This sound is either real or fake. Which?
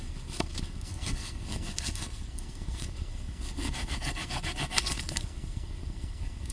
fake